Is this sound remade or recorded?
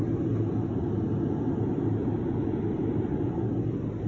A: recorded